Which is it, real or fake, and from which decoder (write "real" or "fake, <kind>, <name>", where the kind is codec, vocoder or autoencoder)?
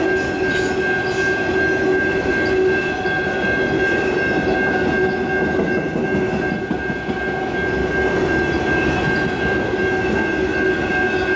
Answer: real